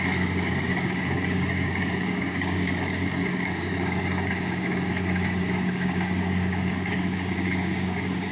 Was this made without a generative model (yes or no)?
no